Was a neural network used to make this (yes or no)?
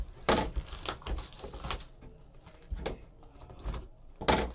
no